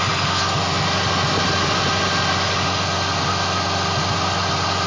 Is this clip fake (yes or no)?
no